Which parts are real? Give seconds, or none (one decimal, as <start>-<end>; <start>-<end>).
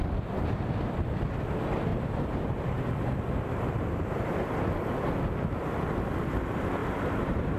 0.0-1.9; 4.1-6.8